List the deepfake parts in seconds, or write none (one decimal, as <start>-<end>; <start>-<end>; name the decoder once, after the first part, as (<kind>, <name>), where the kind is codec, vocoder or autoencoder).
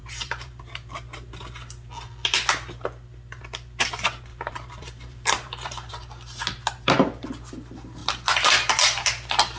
0.0-0.6 (vocoder, BigVGAN v2); 4.3-5.9